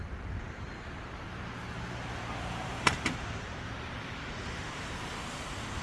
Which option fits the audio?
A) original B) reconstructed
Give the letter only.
B